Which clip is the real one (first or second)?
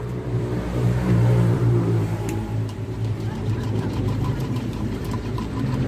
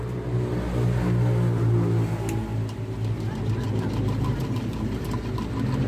second